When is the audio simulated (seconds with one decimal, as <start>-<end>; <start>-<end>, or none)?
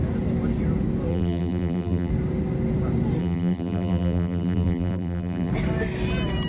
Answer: 1.1-2.1; 3.2-5.5